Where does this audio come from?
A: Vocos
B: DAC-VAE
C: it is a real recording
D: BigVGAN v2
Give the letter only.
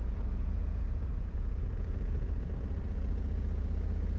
A